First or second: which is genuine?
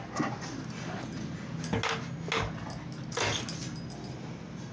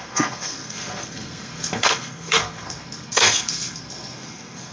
first